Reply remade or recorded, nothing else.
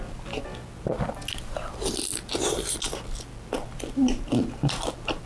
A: recorded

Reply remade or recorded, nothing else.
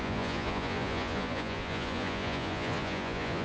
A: remade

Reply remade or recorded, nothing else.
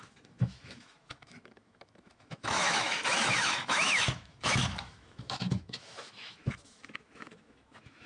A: remade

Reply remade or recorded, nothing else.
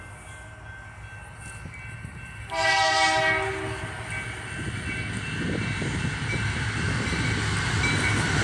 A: recorded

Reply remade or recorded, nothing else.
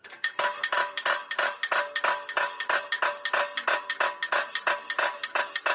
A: recorded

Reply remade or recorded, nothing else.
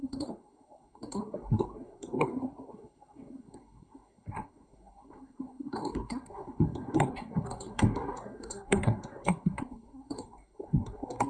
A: remade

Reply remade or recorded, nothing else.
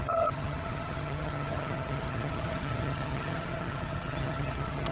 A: remade